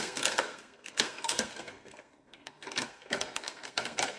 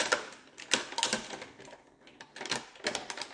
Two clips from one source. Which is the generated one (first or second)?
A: first